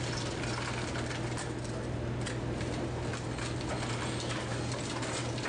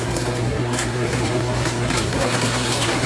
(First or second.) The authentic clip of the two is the first